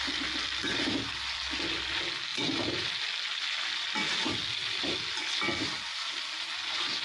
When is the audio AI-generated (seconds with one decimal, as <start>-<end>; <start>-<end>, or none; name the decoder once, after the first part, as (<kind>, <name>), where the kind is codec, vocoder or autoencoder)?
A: 2.3-3.1 (vocoder, BigVGAN v2); 4.2-4.8